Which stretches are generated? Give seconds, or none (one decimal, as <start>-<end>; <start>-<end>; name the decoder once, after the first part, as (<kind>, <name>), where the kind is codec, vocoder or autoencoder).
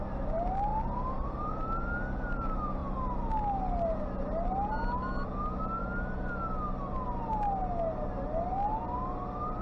none